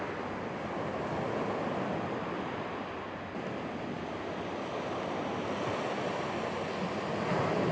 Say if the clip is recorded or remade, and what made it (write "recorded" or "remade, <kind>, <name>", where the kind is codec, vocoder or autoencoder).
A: recorded